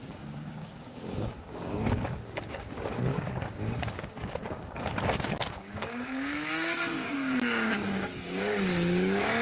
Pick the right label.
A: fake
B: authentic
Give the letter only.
A